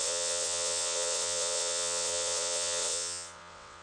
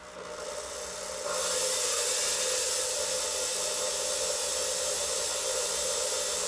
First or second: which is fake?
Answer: first